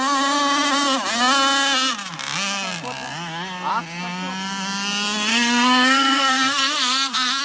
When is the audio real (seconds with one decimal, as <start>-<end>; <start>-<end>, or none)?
0.0-5.3